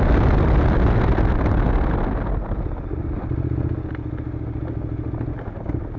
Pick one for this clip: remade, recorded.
recorded